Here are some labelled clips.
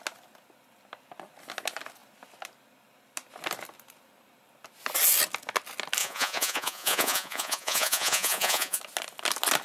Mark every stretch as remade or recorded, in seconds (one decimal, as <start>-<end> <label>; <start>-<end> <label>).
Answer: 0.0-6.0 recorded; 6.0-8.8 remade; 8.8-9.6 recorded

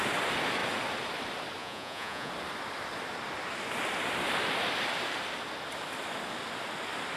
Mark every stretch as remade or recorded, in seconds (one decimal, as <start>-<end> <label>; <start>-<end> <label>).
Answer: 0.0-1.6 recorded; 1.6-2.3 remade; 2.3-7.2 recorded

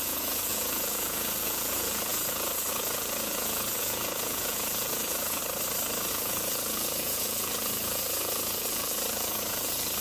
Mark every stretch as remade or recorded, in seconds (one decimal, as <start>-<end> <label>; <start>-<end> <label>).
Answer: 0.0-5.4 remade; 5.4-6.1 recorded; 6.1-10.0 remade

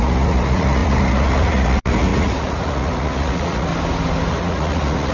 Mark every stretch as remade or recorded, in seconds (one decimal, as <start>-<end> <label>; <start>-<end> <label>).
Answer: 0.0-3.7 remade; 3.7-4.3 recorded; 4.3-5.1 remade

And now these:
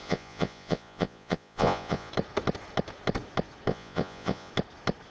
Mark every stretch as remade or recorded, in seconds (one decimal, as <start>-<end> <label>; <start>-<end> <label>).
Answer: 0.0-2.1 remade; 2.1-3.7 recorded; 3.7-4.5 remade; 4.5-5.1 recorded

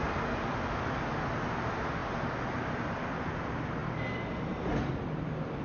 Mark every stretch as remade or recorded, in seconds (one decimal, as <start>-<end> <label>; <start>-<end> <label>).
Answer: 0.0-5.6 recorded

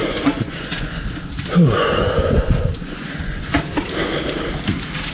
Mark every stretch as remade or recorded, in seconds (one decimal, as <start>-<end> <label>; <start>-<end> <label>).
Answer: 0.0-1.0 remade; 1.0-1.5 recorded; 1.5-3.6 remade; 3.6-5.1 recorded

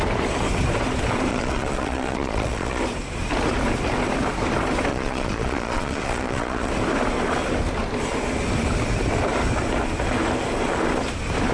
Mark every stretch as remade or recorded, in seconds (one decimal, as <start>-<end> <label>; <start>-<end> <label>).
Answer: 0.0-1.3 recorded; 1.3-2.8 remade; 2.8-4.9 recorded; 4.9-6.7 remade; 6.7-11.5 recorded